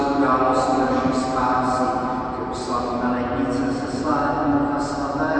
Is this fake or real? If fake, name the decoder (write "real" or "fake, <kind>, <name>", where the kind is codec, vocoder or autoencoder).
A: real